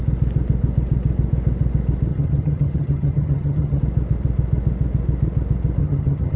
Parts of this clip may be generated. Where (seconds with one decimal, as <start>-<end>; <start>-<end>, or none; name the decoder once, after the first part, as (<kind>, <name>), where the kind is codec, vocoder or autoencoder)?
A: 2.1-3.8 (vocoder, HiFi-GAN); 5.8-6.4